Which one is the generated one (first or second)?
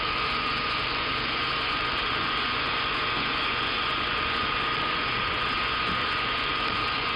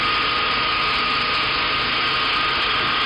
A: first